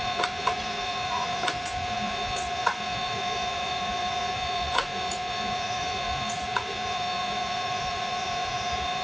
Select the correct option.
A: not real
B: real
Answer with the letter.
A